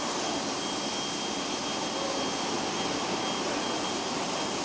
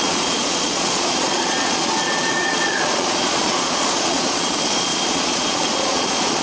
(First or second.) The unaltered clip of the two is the first